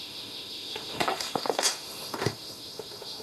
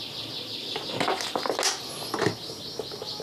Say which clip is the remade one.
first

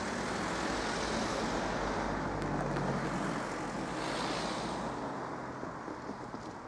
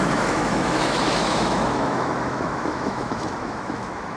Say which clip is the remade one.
second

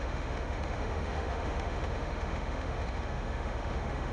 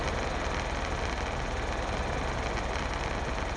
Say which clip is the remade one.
first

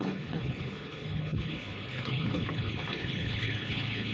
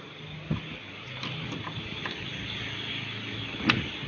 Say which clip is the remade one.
first